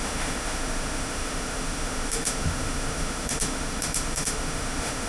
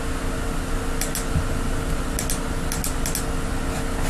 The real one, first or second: second